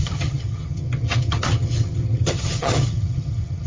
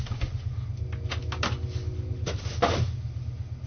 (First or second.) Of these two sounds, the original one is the second